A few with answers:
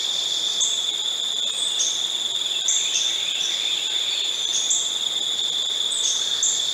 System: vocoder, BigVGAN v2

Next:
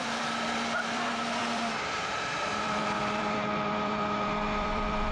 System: vocoder, BigVGAN v2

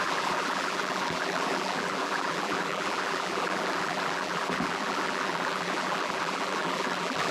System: vocoder, BigVGAN v2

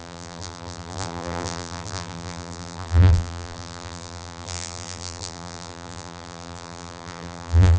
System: vocoder, BigVGAN v2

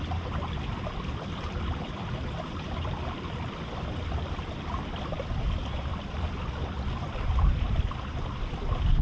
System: none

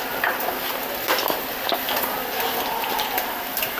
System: none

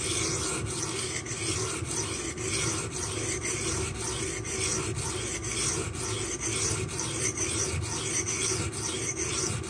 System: none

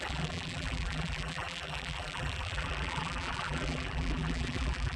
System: vocoder, BigVGAN v2